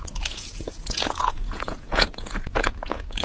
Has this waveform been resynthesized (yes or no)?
yes